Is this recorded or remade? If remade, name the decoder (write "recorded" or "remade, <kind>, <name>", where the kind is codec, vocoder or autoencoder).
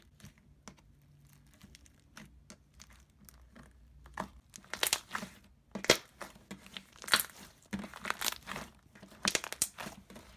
recorded